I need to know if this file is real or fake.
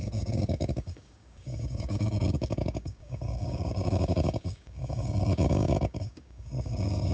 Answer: fake